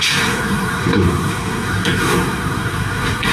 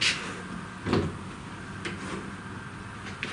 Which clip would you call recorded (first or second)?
second